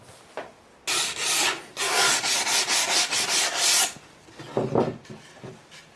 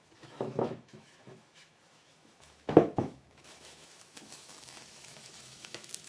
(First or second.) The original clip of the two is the first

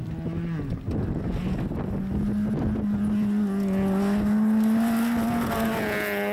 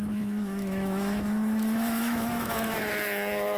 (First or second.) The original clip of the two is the first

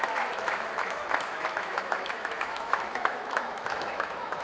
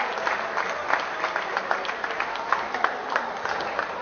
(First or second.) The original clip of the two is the second